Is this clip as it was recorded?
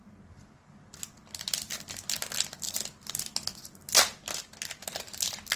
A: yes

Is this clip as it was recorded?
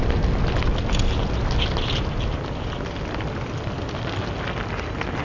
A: yes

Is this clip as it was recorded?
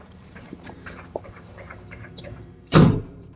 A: no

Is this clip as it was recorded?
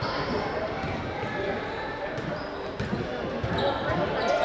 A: yes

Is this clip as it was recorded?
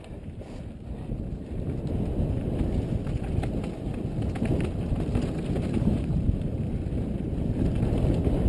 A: yes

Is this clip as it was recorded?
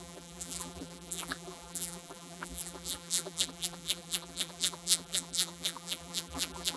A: no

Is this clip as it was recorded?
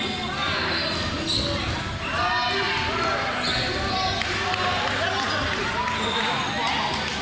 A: yes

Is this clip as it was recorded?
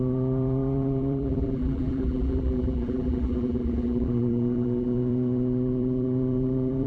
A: no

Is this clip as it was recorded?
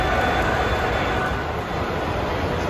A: yes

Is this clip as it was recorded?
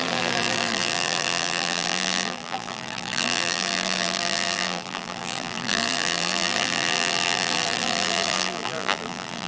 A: no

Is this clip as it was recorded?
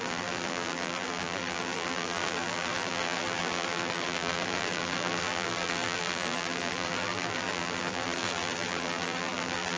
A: no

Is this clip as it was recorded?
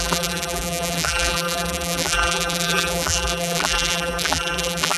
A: no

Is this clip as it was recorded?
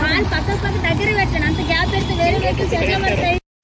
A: yes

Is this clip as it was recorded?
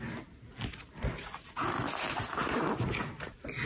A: yes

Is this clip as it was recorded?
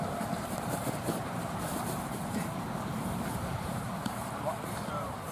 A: no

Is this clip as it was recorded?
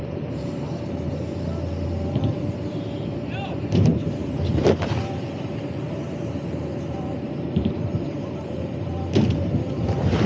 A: no